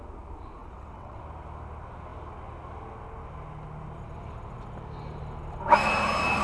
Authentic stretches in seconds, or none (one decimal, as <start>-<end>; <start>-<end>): 0.0-0.6; 1.2-6.4